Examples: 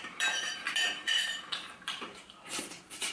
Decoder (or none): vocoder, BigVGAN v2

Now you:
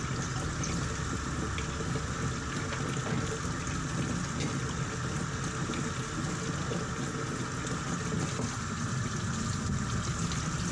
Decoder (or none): none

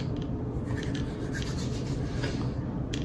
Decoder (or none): none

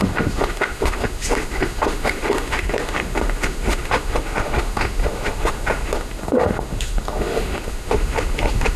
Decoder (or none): autoencoder, DAC-VAE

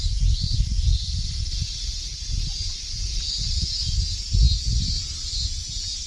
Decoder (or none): none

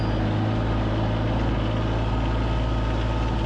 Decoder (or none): none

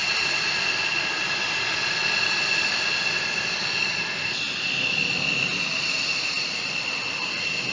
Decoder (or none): none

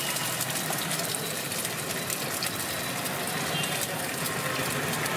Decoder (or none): none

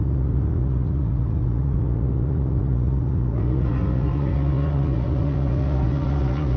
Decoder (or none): vocoder, Vocos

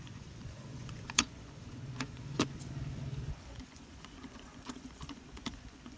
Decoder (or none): vocoder, Vocos